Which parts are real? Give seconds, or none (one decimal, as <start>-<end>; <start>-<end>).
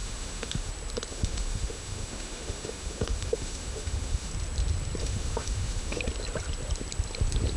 0.7-1.1; 4.3-5.0; 6.0-7.6